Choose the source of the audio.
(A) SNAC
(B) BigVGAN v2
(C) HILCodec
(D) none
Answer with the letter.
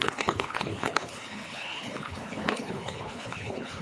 C